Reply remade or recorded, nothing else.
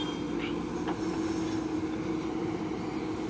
recorded